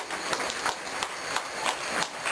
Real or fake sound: real